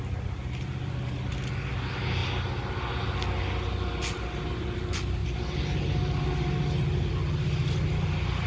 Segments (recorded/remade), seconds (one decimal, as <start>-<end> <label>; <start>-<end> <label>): 0.0-8.5 recorded